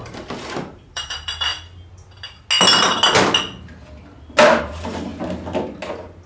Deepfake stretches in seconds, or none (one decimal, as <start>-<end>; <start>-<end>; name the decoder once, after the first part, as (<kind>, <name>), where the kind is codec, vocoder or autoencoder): 0.0-1.5 (vocoder, BigVGAN v2); 4.6-5.1